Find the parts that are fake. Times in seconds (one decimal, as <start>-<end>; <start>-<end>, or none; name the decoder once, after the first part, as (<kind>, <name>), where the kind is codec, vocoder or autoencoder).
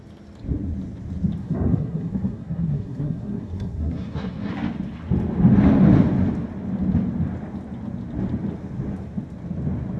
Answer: 1.4-4.5 (codec, SNAC)